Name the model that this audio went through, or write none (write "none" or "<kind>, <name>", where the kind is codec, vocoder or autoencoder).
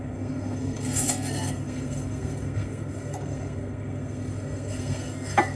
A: codec, SNAC